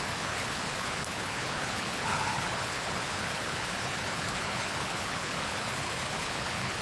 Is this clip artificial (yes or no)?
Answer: yes